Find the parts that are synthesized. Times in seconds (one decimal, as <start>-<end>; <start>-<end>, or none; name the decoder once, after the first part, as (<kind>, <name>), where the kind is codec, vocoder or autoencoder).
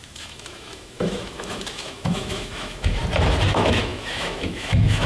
0.0-3.0 (autoencoder, DAC-VAE); 3.5-5.1